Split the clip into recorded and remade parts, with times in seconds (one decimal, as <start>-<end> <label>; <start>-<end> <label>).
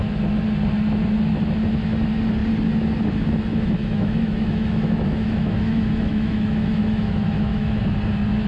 0.0-3.5 recorded; 3.5-7.8 remade; 7.8-8.5 recorded